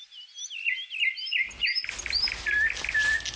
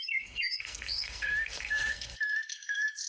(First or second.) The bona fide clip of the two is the first